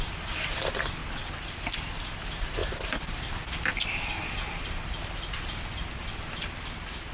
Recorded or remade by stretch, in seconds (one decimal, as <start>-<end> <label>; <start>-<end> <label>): 0.0-7.1 recorded